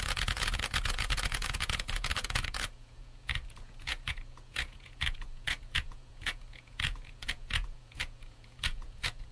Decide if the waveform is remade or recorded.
remade